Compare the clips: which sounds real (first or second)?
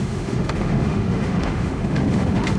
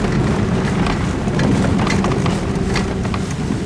second